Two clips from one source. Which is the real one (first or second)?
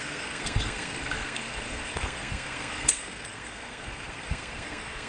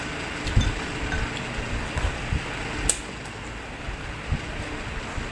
second